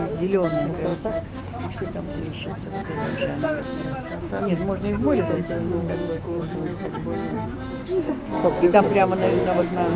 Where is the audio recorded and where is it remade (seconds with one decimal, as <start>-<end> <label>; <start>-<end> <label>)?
0.0-9.0 remade; 9.0-9.6 recorded; 9.6-10.0 remade